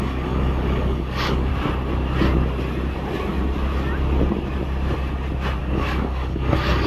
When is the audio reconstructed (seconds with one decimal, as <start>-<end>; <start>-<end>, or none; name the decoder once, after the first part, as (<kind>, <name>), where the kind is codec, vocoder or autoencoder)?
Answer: 0.0-1.5 (codec, DAC); 5.6-6.9